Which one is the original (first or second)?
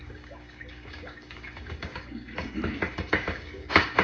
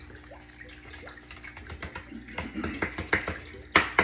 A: second